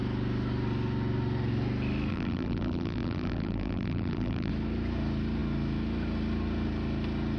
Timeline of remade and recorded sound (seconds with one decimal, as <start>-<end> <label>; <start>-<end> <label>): 0.0-2.1 recorded; 2.1-4.5 remade; 4.5-7.4 recorded